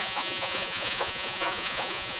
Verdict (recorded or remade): remade